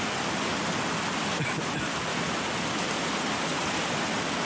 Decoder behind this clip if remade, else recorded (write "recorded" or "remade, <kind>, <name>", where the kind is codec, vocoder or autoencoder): recorded